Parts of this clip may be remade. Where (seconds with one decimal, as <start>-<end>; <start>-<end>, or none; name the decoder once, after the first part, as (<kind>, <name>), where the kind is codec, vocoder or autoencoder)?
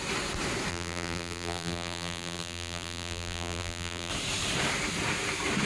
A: 0.7-4.1 (vocoder, BigVGAN v2)